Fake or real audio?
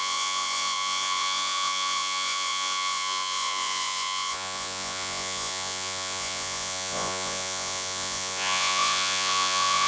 fake